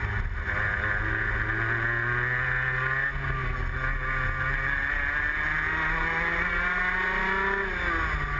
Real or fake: real